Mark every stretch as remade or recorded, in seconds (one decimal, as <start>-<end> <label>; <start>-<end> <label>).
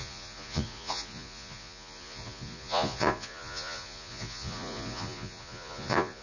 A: 0.0-6.2 remade